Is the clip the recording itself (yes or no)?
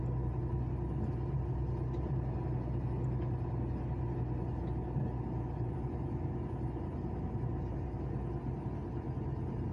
yes